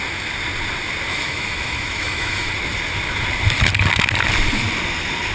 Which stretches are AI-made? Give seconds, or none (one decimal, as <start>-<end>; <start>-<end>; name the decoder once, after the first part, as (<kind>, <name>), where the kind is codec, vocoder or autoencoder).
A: 1.1-2.5 (autoencoder, DAC-VAE)